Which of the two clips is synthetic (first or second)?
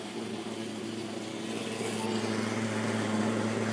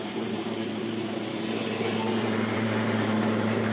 second